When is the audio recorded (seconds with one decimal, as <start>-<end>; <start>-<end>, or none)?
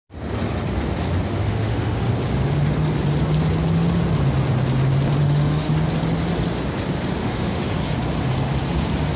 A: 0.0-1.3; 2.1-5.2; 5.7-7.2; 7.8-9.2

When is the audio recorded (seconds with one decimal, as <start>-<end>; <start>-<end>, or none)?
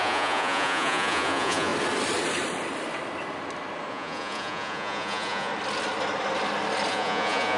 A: 1.7-3.9; 5.5-6.9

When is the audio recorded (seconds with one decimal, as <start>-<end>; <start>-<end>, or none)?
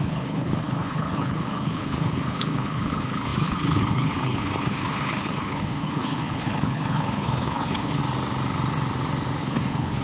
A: 8.0-9.4